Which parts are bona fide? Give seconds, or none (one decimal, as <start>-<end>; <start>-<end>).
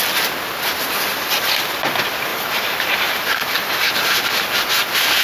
0.0-1.1; 1.7-2.3; 3.9-5.2